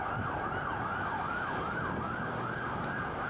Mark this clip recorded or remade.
recorded